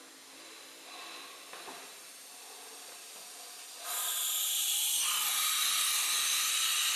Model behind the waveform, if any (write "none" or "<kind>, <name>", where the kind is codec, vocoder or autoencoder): none